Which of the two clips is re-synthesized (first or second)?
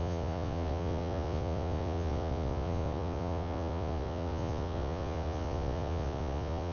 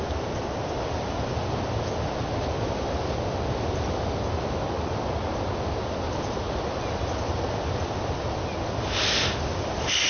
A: first